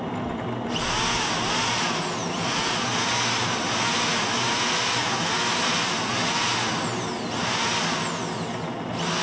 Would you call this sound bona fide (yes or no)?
yes